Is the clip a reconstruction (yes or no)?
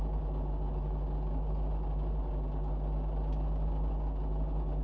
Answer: no